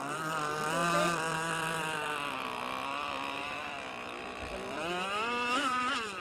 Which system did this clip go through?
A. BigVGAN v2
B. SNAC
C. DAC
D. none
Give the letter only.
A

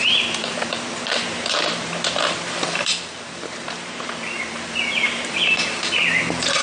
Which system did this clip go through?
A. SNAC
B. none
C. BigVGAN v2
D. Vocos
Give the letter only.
C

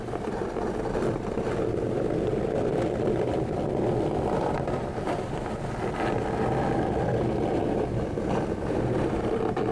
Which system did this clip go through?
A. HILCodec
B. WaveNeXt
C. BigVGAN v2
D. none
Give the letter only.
C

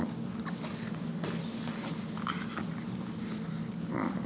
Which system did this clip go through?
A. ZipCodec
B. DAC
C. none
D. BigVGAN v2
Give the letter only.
C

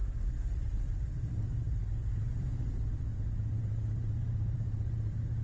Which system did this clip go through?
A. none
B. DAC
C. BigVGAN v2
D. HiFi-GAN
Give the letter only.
C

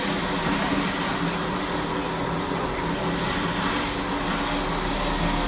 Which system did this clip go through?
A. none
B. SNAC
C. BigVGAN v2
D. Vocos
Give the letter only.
A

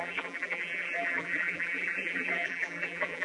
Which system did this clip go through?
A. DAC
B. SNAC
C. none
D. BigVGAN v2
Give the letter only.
D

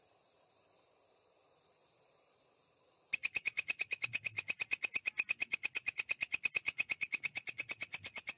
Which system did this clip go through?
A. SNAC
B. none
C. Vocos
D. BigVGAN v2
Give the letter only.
B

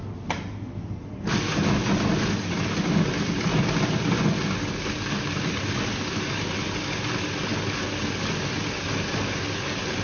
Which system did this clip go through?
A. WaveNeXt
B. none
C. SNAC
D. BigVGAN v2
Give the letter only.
B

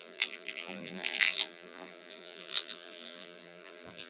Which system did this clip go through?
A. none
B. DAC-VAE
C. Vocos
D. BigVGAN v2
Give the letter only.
D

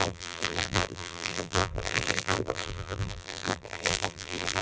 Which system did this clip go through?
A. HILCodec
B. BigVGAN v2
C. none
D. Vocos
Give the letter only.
B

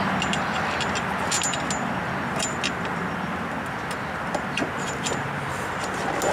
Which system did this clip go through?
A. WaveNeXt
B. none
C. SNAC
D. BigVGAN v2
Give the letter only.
B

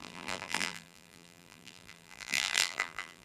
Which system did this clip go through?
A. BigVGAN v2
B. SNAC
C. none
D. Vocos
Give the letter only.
A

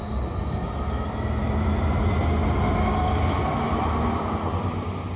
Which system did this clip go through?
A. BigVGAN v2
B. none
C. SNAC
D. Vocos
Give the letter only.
B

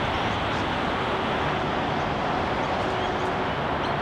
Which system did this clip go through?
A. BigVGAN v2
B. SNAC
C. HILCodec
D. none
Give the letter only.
D